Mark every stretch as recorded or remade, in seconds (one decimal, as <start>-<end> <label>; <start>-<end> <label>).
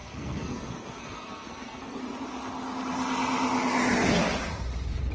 0.0-2.0 remade; 2.0-5.1 recorded